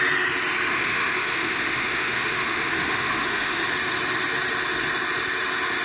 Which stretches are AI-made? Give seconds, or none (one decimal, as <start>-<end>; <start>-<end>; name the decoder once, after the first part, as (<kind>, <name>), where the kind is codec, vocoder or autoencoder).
0.7-3.7 (autoencoder, DAC-VAE)

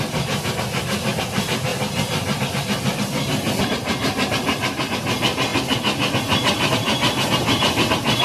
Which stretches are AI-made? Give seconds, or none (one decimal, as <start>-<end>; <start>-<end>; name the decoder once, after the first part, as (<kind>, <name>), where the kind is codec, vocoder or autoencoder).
0.0-1.7 (vocoder, BigVGAN v2); 2.5-5.5; 6.7-8.2

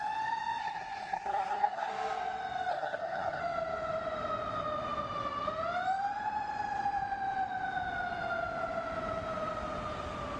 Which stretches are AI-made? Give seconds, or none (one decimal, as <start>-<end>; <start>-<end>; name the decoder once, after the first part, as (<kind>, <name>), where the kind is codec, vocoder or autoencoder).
0.6-1.9 (codec, SNAC); 2.7-3.4